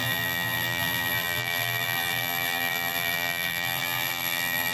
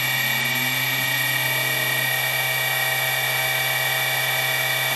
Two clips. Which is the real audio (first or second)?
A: second